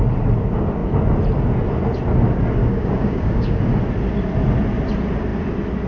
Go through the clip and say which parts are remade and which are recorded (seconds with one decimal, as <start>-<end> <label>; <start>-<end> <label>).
0.0-2.6 recorded; 2.6-3.6 remade; 3.6-5.9 recorded